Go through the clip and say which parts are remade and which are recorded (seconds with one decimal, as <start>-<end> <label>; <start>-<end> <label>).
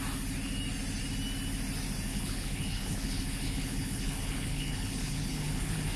0.0-2.1 recorded; 2.1-6.0 remade